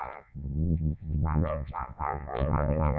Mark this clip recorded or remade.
remade